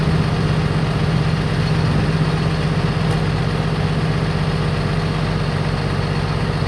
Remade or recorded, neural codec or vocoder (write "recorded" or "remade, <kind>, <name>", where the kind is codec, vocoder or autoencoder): recorded